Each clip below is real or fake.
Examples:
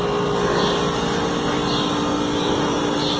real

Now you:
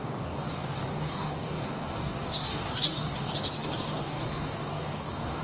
fake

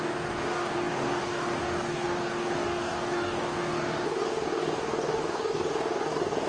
fake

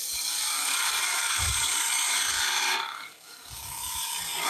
fake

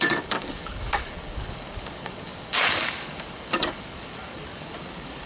fake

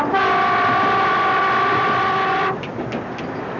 real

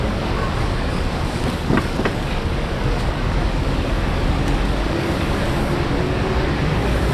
fake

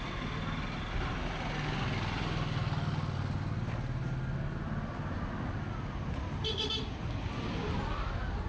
real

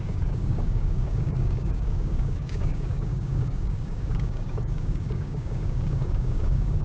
fake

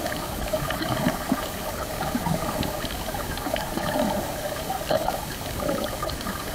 fake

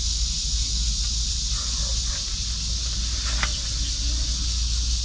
real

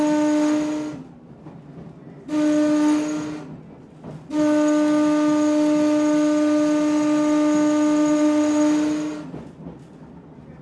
real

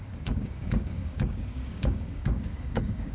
fake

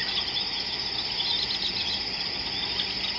real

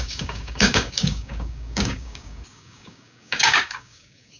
fake